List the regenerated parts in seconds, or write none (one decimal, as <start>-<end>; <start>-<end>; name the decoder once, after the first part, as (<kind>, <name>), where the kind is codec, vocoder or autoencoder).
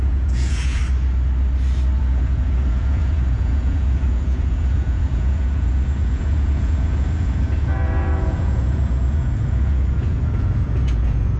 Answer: 0.0-0.8 (vocoder, Vocos); 2.0-11.4